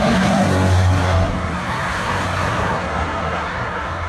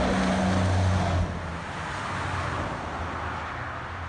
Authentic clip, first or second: second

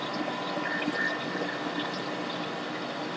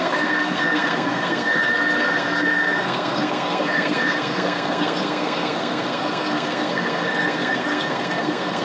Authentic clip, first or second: first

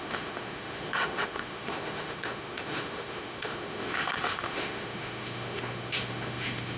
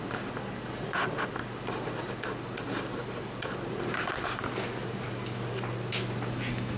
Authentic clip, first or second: second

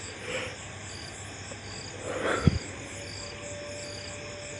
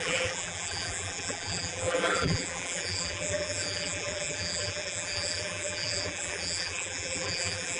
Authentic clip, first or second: first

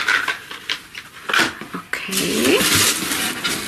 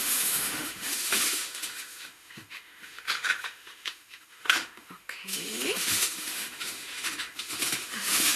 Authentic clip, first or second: first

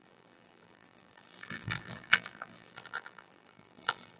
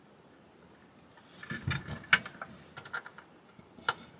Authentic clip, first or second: second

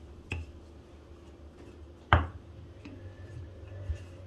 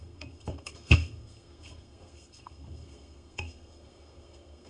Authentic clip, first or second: first